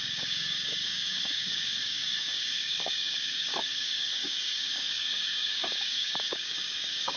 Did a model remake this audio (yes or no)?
yes